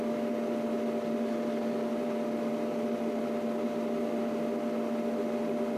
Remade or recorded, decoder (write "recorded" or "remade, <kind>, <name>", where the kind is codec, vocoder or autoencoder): recorded